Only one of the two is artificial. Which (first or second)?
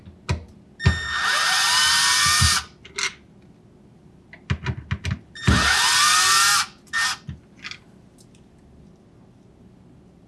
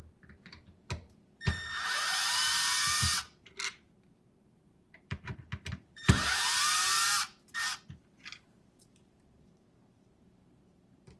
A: second